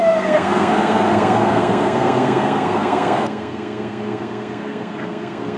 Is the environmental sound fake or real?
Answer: fake